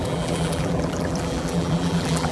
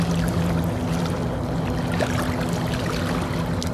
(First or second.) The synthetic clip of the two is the first